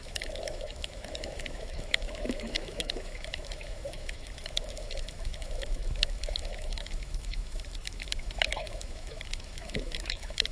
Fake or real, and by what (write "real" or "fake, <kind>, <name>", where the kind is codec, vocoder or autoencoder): fake, autoencoder, DAC-VAE